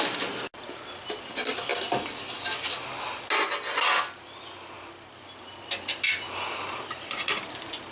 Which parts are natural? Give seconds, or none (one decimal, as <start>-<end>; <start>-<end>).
0.0-7.9

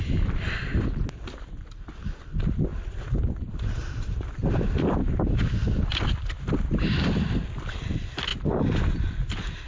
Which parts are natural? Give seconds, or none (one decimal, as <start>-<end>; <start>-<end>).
0.0-9.7

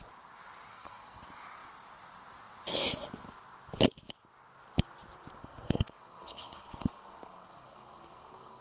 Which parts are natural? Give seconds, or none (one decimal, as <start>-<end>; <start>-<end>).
0.0-0.7; 1.2-5.4

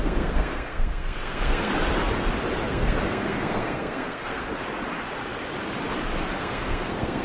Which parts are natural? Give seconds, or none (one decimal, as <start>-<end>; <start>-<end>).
1.7-2.7; 4.4-6.4

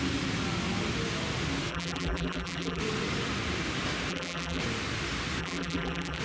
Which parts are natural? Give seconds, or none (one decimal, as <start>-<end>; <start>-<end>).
0.0-1.7; 2.8-4.1; 4.6-5.4

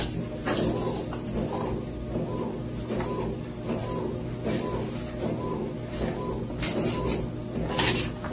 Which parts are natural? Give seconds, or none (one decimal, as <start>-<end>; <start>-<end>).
0.0-8.3

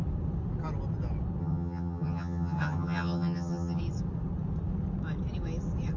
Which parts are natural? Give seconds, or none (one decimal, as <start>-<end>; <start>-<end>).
0.0-1.4; 3.8-6.0

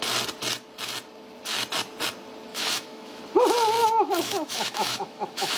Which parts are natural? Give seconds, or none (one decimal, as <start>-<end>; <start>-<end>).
0.0-2.5; 3.2-3.8